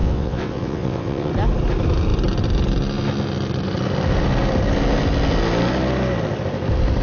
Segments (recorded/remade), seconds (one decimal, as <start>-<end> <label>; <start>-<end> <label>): 0.0-1.3 remade; 1.3-7.0 recorded